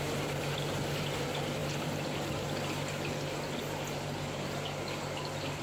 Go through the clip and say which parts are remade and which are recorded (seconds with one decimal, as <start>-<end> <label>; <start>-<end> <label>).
0.0-5.6 recorded